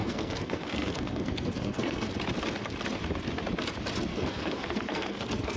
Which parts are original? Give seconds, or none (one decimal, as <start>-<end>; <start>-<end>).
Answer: 2.1-4.1